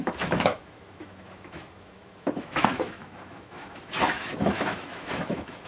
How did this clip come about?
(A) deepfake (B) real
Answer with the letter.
A